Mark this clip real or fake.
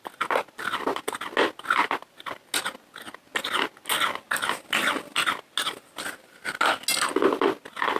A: real